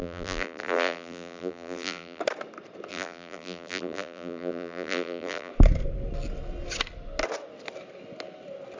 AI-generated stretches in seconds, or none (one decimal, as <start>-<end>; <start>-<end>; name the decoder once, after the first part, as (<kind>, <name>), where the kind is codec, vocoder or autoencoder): 0.0-2.2 (vocoder, BigVGAN v2); 2.9-5.5